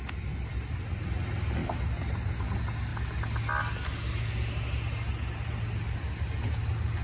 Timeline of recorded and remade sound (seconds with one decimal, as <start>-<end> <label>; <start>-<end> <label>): 0.0-7.0 recorded